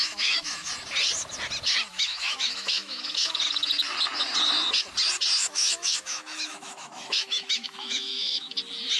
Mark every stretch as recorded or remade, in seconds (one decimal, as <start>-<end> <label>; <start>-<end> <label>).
0.0-0.7 remade; 0.7-1.9 recorded; 1.9-3.4 remade; 3.4-5.4 recorded; 5.4-8.5 remade; 8.5-9.0 recorded